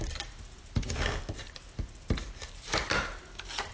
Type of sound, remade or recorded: recorded